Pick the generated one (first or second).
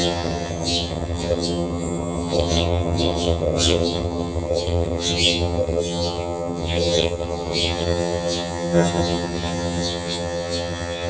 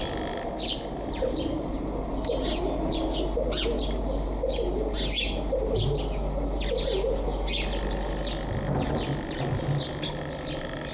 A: first